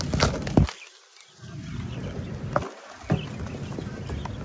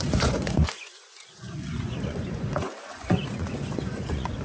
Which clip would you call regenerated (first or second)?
second